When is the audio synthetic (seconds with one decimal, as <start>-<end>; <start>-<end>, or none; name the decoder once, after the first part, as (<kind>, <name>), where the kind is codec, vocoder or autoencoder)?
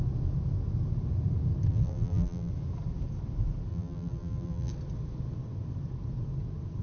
1.7-2.5 (vocoder, BigVGAN v2); 3.7-4.7